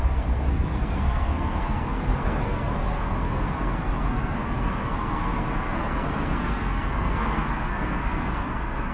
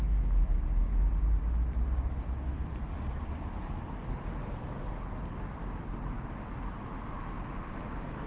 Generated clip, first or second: first